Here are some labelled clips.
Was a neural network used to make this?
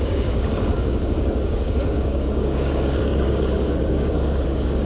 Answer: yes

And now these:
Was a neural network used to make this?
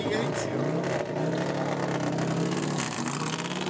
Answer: no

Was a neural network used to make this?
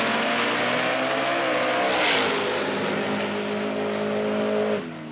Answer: no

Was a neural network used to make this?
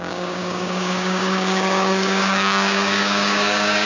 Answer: yes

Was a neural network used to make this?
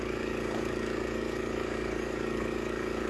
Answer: yes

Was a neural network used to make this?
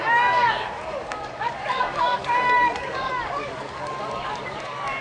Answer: yes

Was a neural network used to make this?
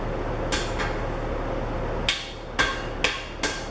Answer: no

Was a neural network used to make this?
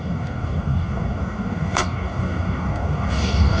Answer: yes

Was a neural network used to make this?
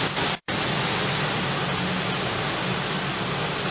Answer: no